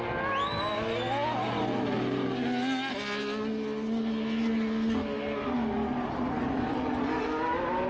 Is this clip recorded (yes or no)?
yes